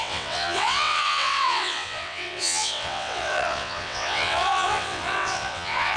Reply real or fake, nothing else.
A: fake